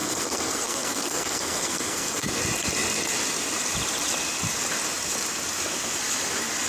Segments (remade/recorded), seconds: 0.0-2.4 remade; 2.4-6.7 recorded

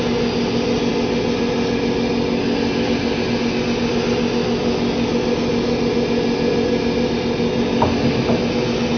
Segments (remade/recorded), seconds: 0.0-9.0 recorded

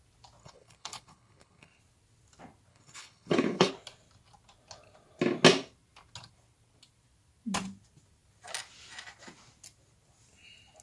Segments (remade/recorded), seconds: 0.0-0.4 recorded; 0.4-1.8 remade; 1.8-2.7 recorded; 2.7-3.7 remade; 3.7-10.8 recorded

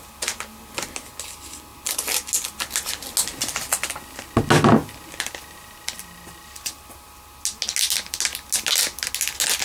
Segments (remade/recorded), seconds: 0.0-9.6 recorded

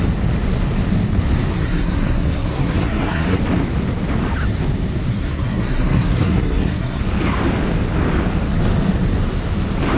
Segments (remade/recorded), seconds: 0.0-1.5 recorded; 1.5-3.4 remade; 3.4-5.1 recorded; 5.1-7.0 remade; 7.0-10.0 recorded

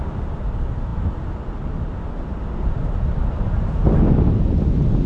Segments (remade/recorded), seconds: 0.0-5.1 recorded